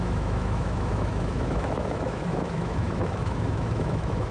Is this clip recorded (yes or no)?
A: no